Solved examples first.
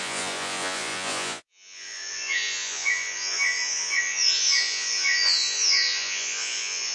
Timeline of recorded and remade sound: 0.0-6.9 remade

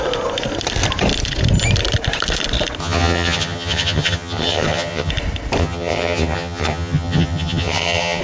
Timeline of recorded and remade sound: 0.0-2.8 recorded; 2.8-5.1 remade; 5.1-5.6 recorded; 5.6-8.2 remade

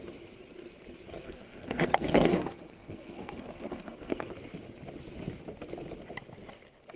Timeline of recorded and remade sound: 0.0-1.2 recorded; 1.2-4.3 remade; 4.3-7.0 recorded

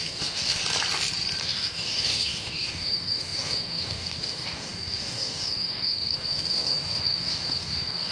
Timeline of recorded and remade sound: 0.0-0.6 remade; 0.6-1.4 recorded; 1.4-8.1 remade

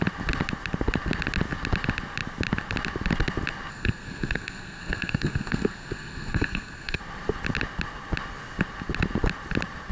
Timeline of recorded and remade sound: 0.0-3.7 recorded; 3.7-7.0 remade; 7.0-9.9 recorded